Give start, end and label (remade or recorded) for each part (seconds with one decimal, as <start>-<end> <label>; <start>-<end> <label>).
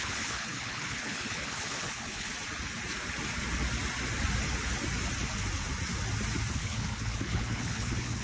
0.0-2.3 remade; 2.3-6.5 recorded; 6.5-8.2 remade